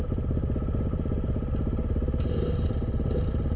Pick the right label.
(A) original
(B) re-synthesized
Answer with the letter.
A